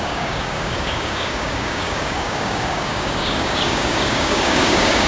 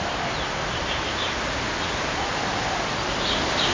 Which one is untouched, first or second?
second